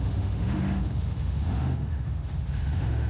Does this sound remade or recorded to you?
remade